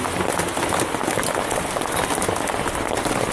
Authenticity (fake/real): real